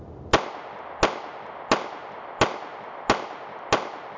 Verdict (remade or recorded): recorded